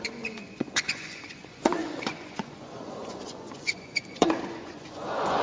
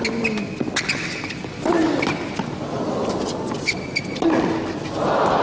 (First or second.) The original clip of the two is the second